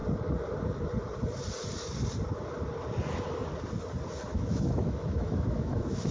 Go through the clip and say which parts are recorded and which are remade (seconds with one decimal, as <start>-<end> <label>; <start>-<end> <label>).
0.0-4.3 recorded; 4.3-6.1 remade